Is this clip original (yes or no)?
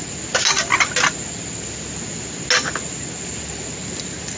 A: yes